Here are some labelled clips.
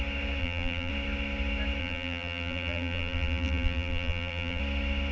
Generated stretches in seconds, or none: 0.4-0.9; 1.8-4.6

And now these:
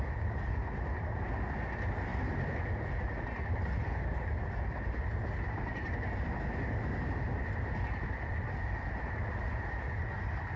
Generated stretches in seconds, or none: none